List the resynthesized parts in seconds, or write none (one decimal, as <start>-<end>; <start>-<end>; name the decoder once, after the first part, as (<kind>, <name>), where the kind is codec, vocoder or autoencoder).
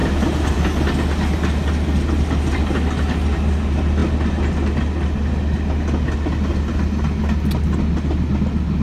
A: none